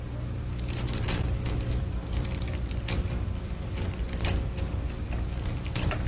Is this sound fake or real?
real